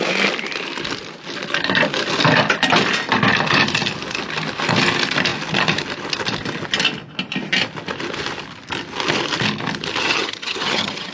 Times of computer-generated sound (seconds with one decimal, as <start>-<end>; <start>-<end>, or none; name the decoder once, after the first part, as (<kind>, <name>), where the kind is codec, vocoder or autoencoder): 10.0-11.1 (vocoder, HiFi-GAN)